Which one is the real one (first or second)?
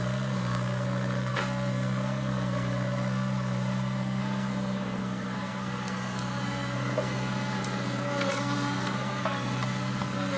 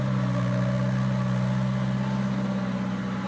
second